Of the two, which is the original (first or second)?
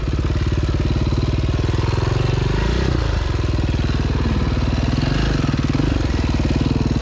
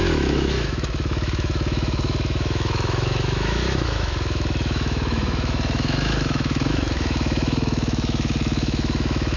first